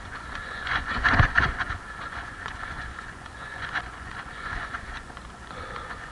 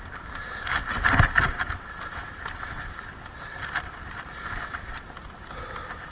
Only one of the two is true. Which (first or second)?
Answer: second